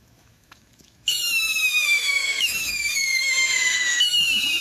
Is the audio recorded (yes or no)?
no